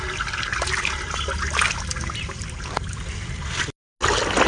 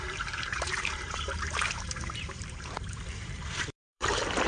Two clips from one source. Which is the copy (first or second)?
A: second